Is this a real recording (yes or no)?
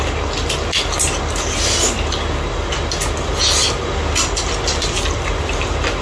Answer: yes